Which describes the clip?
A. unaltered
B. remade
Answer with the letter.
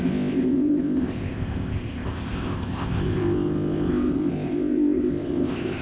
B